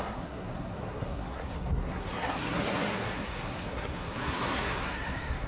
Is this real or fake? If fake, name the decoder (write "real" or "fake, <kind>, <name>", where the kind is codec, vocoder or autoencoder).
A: fake, codec, SNAC